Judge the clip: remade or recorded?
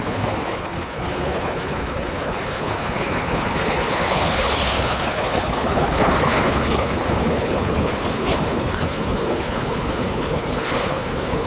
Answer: remade